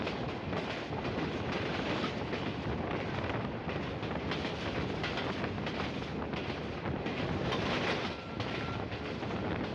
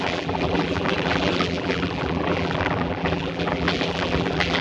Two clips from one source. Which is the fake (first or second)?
second